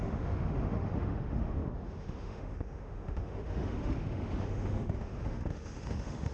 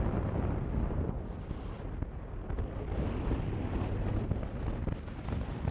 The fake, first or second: first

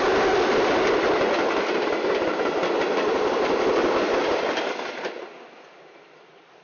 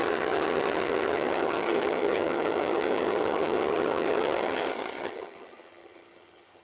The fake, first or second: second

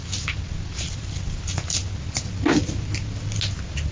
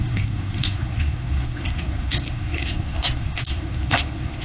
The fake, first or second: second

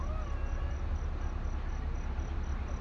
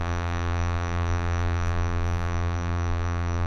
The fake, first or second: second